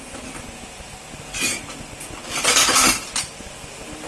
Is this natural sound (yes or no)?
yes